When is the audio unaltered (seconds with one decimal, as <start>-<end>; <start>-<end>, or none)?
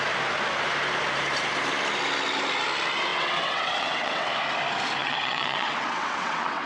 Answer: 0.0-3.1; 4.3-5.0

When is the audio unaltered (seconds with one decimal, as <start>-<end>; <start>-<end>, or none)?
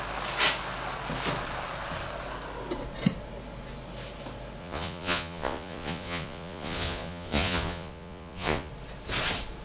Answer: 0.0-4.6; 8.7-9.6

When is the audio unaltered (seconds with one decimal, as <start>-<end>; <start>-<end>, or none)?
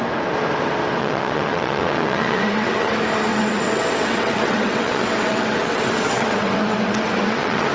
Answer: 0.0-1.0; 2.9-3.3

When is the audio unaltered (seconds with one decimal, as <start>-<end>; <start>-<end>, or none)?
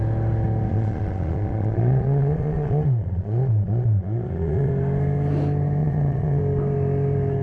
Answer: 0.0-0.7; 4.7-5.8; 6.4-7.4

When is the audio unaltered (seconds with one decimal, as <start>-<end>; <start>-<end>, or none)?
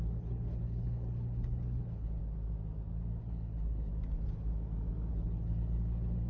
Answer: 2.2-3.2; 3.9-5.1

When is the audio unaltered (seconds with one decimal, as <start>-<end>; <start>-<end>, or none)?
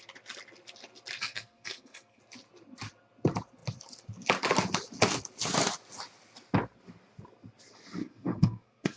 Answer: 0.0-1.2; 2.2-8.0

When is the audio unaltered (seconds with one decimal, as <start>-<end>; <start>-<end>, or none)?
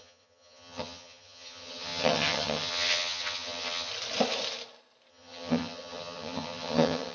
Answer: 3.9-5.1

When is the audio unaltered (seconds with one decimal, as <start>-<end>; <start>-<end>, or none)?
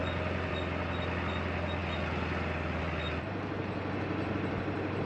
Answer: 0.0-5.1